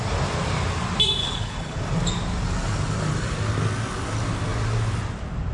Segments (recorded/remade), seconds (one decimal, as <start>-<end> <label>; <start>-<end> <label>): 0.0-1.2 recorded; 1.2-1.8 remade; 1.8-5.5 recorded